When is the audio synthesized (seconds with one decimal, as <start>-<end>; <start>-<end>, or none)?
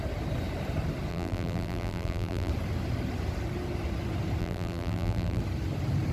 1.1-2.5; 4.4-5.4